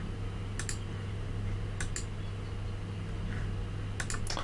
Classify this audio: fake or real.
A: real